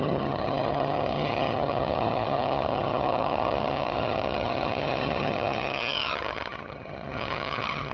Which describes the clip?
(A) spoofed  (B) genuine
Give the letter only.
A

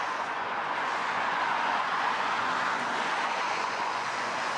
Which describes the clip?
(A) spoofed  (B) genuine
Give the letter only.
A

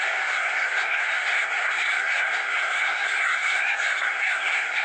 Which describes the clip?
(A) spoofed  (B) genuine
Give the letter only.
A